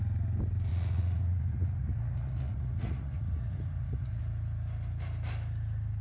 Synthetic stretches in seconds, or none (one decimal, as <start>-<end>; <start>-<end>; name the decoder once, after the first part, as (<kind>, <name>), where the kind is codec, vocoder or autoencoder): 0.7-4.2 (vocoder, Vocos)